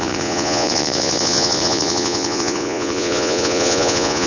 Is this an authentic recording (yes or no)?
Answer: no